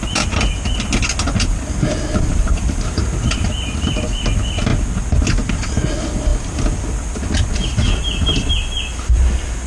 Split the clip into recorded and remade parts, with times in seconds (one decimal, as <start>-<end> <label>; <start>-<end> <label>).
0.0-2.3 recorded; 2.3-3.5 remade; 3.5-9.7 recorded